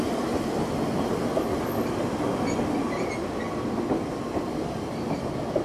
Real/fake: real